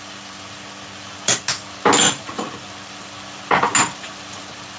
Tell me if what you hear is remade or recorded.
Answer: recorded